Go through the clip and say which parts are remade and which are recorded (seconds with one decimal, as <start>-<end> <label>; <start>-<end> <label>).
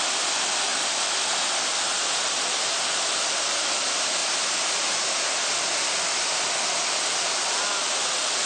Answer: 0.0-8.5 recorded